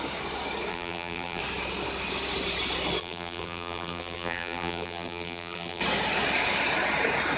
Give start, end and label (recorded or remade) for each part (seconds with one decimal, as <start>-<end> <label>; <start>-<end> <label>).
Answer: 0.0-0.7 recorded; 0.7-1.4 remade; 1.4-3.0 recorded; 3.0-5.8 remade; 5.8-7.4 recorded